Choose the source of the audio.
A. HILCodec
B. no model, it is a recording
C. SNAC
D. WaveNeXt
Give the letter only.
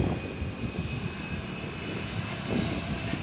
B